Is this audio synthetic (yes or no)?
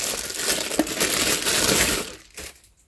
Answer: no